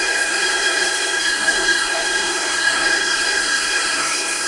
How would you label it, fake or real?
fake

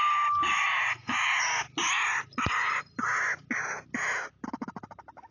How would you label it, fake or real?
real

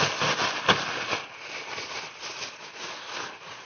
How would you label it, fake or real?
real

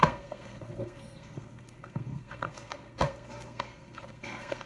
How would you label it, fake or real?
fake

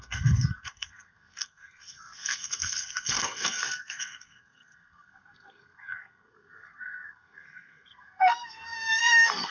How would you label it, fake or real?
fake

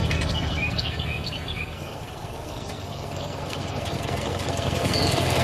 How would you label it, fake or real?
fake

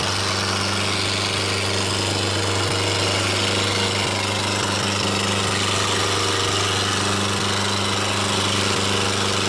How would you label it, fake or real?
real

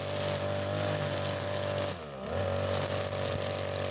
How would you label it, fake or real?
real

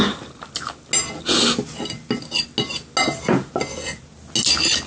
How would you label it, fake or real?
real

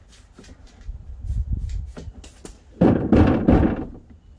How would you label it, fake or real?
real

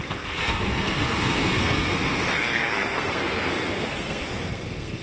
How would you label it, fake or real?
fake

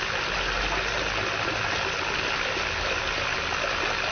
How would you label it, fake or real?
real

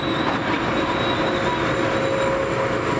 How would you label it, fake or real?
real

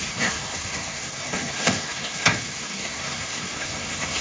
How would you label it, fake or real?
fake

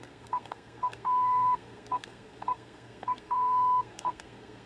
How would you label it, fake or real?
fake